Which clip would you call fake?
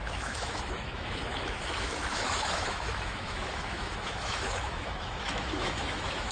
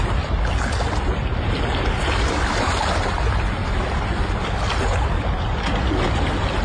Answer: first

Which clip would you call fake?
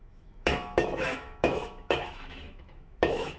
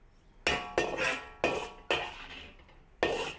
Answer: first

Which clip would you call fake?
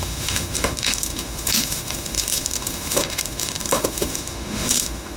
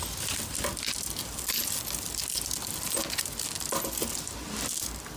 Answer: first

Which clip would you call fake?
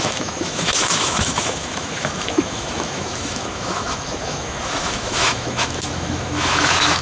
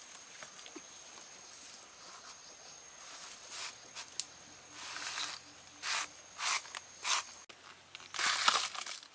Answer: first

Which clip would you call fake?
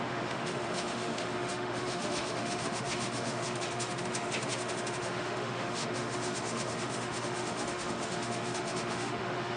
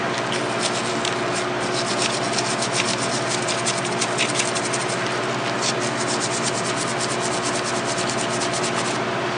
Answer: first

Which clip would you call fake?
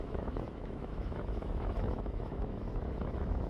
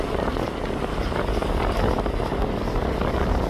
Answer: first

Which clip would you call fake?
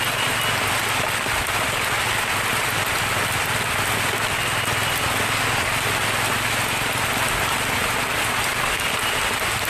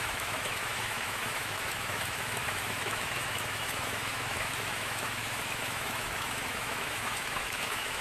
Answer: second